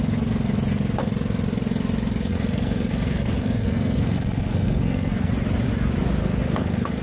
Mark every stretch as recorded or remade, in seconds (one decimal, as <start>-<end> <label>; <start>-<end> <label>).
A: 0.0-2.3 recorded; 2.3-5.3 remade; 5.3-6.2 recorded; 6.2-7.0 remade